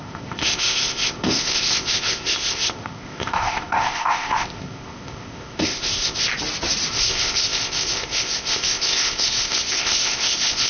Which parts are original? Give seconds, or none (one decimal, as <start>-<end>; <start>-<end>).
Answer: 6.3-6.9